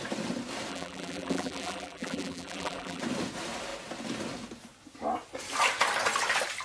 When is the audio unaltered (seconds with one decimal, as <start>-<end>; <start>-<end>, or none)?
0.0-0.7; 3.0-6.6